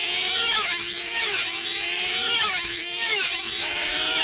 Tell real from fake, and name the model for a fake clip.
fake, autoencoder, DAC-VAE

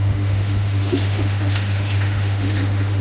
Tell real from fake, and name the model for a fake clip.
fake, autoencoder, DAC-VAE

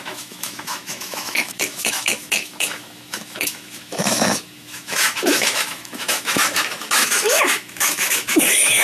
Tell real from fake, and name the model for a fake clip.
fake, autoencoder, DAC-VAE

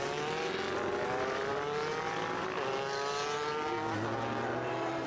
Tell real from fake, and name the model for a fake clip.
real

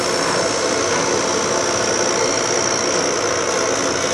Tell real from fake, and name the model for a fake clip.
real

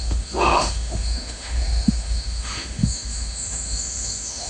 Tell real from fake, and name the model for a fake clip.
fake, autoencoder, DAC-VAE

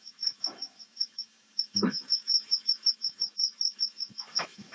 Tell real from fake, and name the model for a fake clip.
fake, autoencoder, DAC-VAE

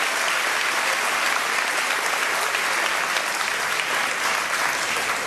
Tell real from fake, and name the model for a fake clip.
real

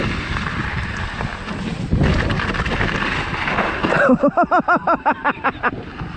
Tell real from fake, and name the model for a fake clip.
real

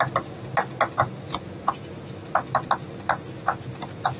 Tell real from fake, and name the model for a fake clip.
real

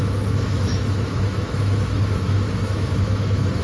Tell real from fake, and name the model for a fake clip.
fake, autoencoder, DAC-VAE